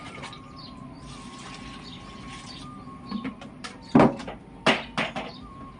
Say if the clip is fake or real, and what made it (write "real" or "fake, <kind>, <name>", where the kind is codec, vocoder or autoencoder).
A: real